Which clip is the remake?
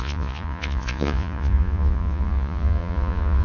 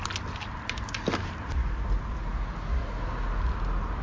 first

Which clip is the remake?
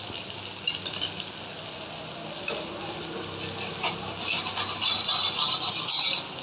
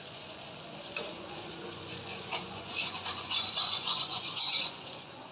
second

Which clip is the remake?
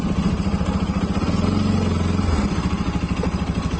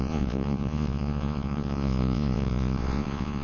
second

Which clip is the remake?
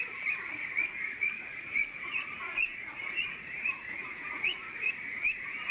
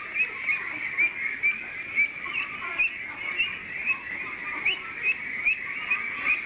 first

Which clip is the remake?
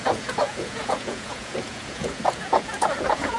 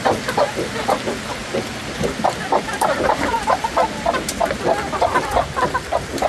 first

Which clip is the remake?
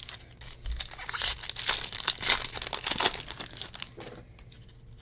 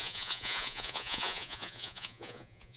second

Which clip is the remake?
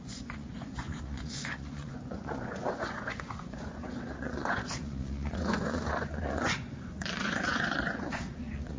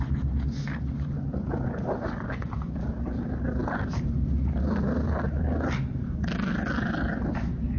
first